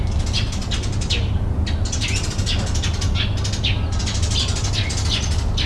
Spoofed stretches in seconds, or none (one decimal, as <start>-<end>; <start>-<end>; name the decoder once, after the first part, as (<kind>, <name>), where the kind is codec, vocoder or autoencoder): none